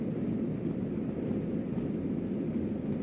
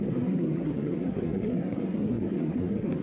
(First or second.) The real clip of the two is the first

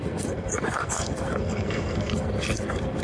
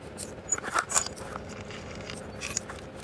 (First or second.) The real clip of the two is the second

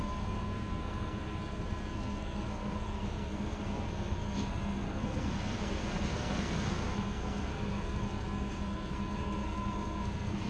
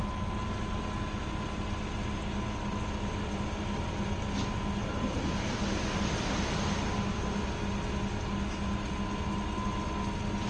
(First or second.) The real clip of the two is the second